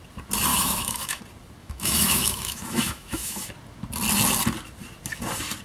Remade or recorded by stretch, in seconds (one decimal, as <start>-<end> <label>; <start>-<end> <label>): 0.0-0.5 recorded; 0.5-1.2 remade; 1.2-1.6 recorded; 1.6-3.5 remade; 3.5-5.6 recorded